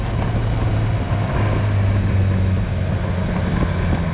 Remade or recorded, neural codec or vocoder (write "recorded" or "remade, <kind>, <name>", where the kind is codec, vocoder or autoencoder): recorded